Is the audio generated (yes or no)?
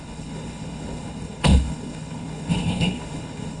yes